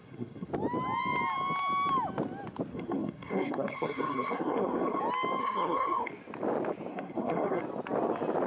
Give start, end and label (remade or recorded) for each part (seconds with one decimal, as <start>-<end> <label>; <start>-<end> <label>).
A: 0.0-0.5 remade; 0.5-2.7 recorded; 2.7-5.0 remade; 5.0-5.4 recorded; 5.4-6.1 remade; 6.1-6.9 recorded; 6.9-7.6 remade; 7.6-8.5 recorded

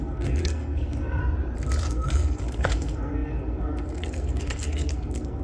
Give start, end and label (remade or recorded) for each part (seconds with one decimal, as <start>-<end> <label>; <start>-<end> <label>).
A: 0.0-1.2 remade; 1.2-1.9 recorded; 1.9-5.4 remade

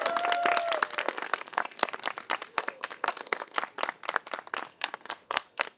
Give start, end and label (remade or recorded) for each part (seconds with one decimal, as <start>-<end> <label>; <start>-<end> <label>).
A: 0.0-1.0 recorded; 1.0-1.9 remade; 1.9-2.5 recorded; 2.5-3.6 remade; 3.6-4.7 recorded; 4.7-5.8 remade

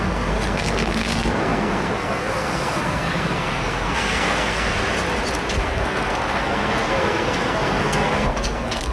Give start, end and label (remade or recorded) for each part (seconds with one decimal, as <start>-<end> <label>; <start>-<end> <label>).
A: 0.0-4.8 remade; 4.8-5.5 recorded; 5.5-8.9 remade